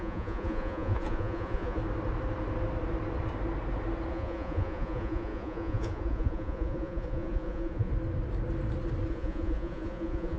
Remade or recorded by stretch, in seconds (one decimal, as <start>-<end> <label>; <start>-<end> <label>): 0.0-1.8 remade; 1.8-4.1 recorded; 4.1-7.9 remade; 7.9-9.1 recorded; 9.1-10.4 remade